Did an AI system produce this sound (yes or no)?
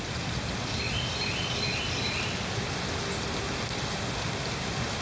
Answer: no